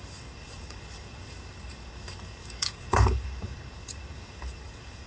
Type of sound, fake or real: fake